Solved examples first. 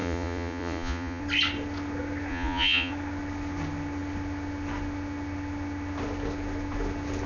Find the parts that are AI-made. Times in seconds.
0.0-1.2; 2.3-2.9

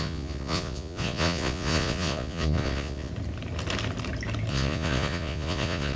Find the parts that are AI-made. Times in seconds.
0.0-3.1; 4.5-6.0

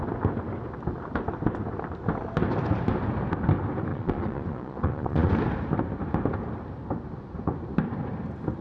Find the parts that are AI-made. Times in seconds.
3.9-5.3

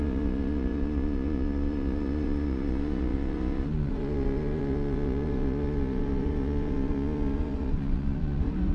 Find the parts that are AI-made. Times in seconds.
0.0-8.7